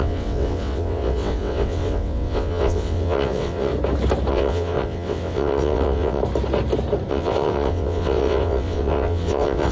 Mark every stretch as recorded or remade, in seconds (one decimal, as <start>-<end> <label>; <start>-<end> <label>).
0.0-3.7 remade; 3.7-4.3 recorded; 4.3-6.2 remade; 6.2-7.1 recorded; 7.1-9.7 remade